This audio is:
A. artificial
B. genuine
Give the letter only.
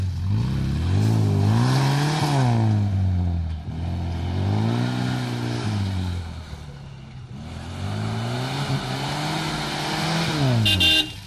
B